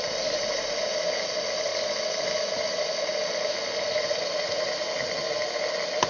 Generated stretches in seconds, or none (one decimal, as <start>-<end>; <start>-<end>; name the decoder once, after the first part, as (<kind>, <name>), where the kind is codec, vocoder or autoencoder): none